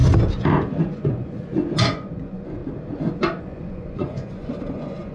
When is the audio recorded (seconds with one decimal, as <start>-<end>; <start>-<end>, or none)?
0.0-0.8; 2.6-3.4